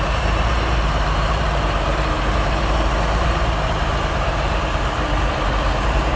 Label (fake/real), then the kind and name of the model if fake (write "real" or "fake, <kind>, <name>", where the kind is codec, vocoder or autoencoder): fake, vocoder, BigVGAN v2